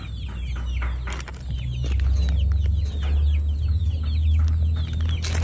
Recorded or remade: recorded